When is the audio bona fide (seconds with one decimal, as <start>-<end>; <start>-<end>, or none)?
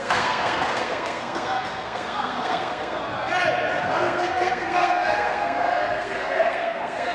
3.0-3.8